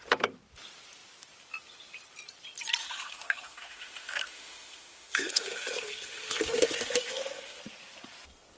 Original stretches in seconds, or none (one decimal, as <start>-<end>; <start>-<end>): 0.0-2.8; 7.6-8.6

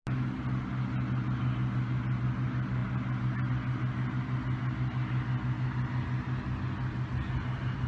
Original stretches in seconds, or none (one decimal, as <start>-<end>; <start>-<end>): 0.0-7.9

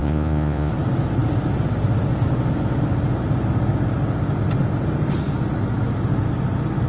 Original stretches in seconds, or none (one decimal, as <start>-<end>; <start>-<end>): 0.7-6.9

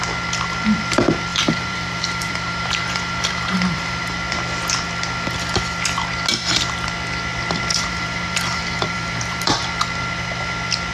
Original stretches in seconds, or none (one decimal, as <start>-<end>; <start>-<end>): 0.0-1.3; 4.2-7.7; 9.6-10.9

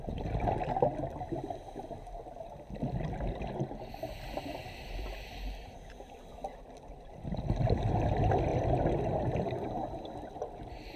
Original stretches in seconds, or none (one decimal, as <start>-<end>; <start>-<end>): 0.0-4.6; 5.3-11.0

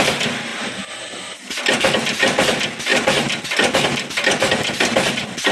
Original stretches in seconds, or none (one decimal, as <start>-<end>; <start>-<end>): 0.0-5.5